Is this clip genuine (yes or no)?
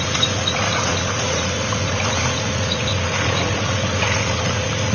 no